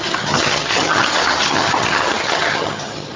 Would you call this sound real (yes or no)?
no